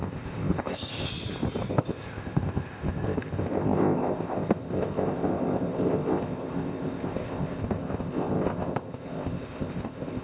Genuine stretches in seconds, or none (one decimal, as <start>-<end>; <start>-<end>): 1.1-1.7